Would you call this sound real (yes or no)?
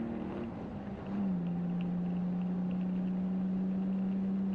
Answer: yes